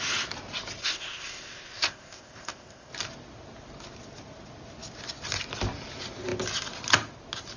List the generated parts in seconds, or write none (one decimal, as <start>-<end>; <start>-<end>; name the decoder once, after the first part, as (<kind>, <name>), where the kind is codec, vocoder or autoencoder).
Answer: 0.8-2.9 (codec, ZipCodec)